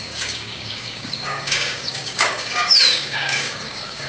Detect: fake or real fake